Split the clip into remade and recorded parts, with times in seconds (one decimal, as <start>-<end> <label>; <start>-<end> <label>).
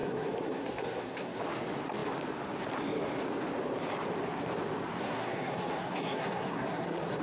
0.0-1.4 remade; 1.4-5.0 recorded; 5.0-7.2 remade